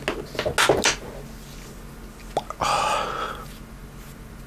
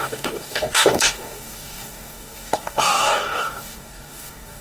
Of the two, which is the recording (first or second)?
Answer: first